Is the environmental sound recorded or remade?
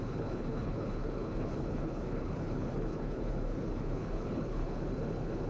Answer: remade